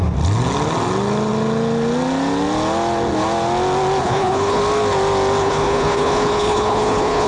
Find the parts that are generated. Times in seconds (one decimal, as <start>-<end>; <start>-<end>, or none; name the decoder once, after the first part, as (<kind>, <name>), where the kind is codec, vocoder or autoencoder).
4.0-4.6 (codec, HILCodec); 5.4-7.3